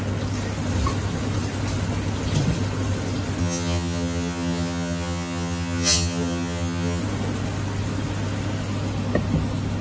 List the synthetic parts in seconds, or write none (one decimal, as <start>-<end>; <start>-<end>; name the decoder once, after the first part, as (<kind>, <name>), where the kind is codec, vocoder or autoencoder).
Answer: 3.4-7.0 (vocoder, HiFi-GAN)